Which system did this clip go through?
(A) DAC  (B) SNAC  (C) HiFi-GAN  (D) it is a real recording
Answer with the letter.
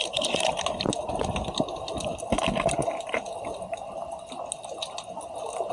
D